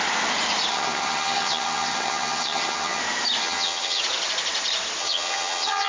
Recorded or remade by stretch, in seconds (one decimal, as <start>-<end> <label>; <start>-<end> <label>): 0.0-0.7 recorded; 0.7-3.0 remade; 3.0-3.4 recorded; 3.4-4.0 remade; 4.0-5.0 recorded; 5.0-5.9 remade

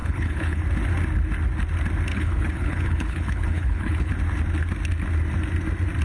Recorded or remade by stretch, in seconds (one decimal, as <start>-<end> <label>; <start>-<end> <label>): 0.0-0.6 remade; 0.6-2.1 recorded; 2.1-4.1 remade; 4.1-6.0 recorded

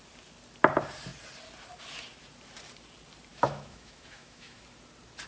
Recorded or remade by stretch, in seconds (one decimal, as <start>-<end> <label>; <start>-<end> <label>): 0.0-3.3 recorded; 3.3-4.6 remade; 4.6-5.3 recorded

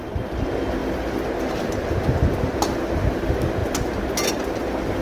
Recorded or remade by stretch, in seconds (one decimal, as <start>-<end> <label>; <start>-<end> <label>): 0.0-5.0 recorded

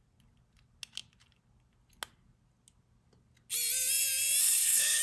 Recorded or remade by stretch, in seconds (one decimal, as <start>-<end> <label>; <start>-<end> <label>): 0.0-4.4 recorded; 4.4-5.0 remade

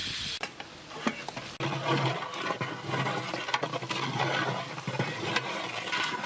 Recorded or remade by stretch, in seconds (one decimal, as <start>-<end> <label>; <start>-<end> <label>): 0.0-6.3 recorded